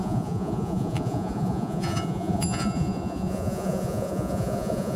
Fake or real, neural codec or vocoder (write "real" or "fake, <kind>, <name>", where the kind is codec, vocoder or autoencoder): fake, vocoder, Vocos